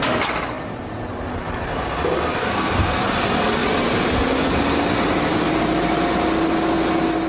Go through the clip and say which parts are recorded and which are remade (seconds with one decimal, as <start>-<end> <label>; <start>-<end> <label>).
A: 0.0-2.4 recorded; 2.4-3.0 remade; 3.0-7.3 recorded